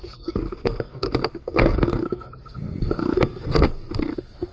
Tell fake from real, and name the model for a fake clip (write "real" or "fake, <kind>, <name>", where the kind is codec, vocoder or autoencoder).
fake, codec, SNAC